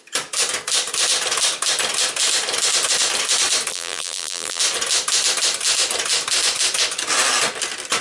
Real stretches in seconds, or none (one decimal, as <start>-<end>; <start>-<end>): 0.0-3.7; 4.6-8.0